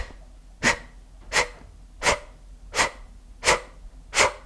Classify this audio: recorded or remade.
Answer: recorded